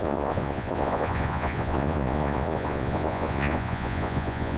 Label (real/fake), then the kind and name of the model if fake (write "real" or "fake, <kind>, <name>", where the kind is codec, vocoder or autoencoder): fake, vocoder, Vocos